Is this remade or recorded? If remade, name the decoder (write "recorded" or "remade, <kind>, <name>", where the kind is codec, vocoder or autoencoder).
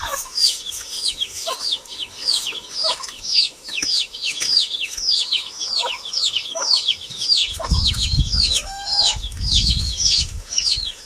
remade, autoencoder, DAC-VAE